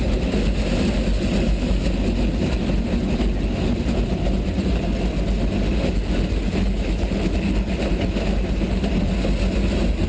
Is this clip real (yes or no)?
yes